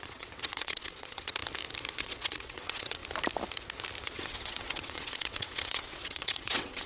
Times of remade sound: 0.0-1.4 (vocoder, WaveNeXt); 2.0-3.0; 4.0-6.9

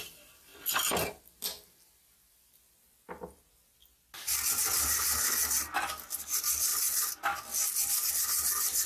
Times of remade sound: none

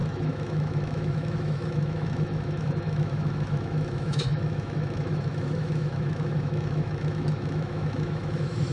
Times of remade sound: 0.0-8.7 (autoencoder, DAC-VAE)

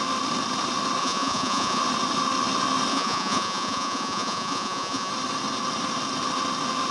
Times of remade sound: 1.0-1.8 (vocoder, Vocos); 2.9-5.1

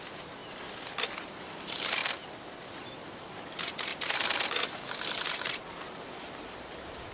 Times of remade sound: 0.0-0.4 (vocoder, BigVGAN v2); 1.2-2.0; 2.6-3.9; 5.7-7.1

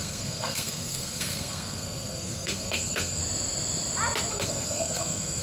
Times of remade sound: 0.0-3.2 (codec, SNAC); 4.3-5.4

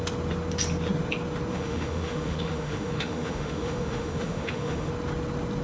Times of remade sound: 1.5-4.9 (autoencoder, DAC-VAE)